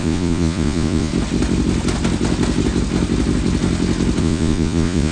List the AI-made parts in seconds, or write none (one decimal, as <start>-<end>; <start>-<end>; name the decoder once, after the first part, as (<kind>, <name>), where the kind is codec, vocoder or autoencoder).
0.0-1.1 (vocoder, Vocos); 4.2-5.1

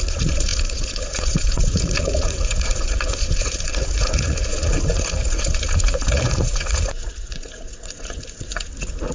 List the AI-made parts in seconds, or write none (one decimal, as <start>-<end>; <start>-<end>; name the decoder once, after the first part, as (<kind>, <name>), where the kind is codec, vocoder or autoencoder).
0.0-9.1 (vocoder, Vocos)

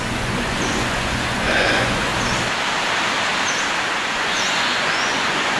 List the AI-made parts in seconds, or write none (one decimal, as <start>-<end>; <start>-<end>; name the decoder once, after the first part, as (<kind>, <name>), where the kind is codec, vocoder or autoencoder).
0.0-2.1 (vocoder, Vocos); 3.9-5.6

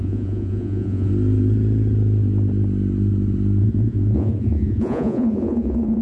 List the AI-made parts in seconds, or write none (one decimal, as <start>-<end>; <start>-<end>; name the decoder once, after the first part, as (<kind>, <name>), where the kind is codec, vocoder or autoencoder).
0.0-1.1 (vocoder, Vocos); 3.6-6.0